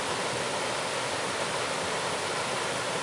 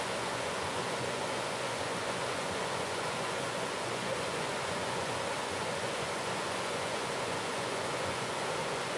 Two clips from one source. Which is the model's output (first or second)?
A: second